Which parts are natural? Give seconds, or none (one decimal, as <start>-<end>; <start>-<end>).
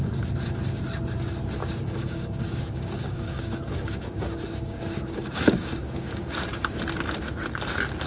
0.0-1.6; 6.2-8.1